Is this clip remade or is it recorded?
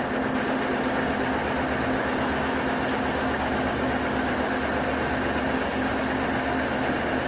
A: recorded